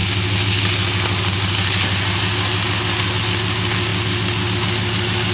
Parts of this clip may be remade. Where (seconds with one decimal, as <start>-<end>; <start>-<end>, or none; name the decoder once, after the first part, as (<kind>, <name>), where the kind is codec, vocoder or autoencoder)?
none